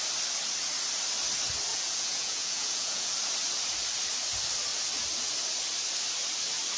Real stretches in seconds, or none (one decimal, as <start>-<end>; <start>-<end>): 0.0-1.7; 3.1-6.8